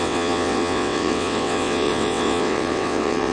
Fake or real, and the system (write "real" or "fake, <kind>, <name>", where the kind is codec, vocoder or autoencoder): fake, vocoder, WaveNeXt